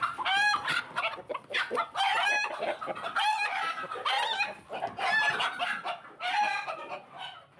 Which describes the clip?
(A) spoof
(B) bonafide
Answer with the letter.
B